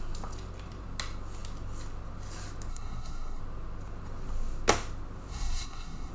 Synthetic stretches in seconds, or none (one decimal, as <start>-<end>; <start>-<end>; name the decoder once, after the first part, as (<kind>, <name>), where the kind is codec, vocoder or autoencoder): 2.7-3.4 (codec, SNAC); 5.3-6.1

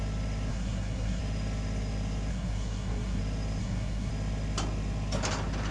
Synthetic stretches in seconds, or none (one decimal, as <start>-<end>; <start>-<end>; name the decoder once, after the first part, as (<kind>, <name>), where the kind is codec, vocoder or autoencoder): 0.5-1.2 (codec, SNAC); 2.3-3.2; 3.6-4.1

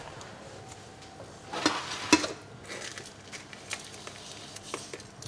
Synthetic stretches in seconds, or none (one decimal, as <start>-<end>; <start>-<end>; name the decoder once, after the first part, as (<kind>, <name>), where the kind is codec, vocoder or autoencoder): none

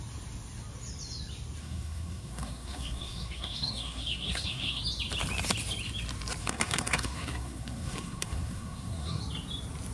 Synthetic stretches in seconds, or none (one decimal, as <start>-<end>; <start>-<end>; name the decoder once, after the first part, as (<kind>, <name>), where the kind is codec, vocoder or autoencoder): 1.6-4.8 (codec, SNAC); 6.4-9.2

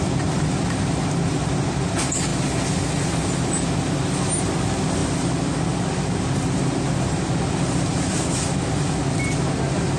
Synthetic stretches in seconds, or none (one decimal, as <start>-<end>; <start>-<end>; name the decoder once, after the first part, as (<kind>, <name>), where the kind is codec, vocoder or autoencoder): none